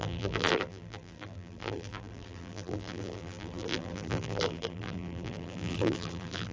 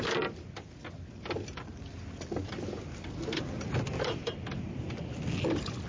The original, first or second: second